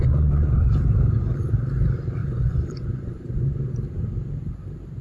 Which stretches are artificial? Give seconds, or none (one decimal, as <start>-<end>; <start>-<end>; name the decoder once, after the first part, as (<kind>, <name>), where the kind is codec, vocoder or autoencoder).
0.0-0.7 (vocoder, Vocos); 2.2-3.7